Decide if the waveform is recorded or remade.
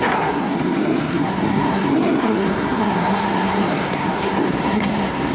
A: remade